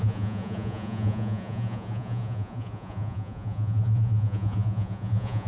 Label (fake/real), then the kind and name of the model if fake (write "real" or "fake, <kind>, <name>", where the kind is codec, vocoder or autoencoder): fake, vocoder, Vocos